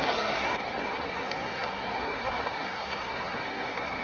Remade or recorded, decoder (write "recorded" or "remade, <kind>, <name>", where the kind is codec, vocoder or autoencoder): remade, codec, SNAC